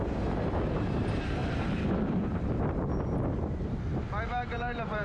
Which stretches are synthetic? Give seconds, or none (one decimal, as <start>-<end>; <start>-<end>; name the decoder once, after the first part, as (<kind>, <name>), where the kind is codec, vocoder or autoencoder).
0.0-1.4 (vocoder, BigVGAN v2); 4.4-5.0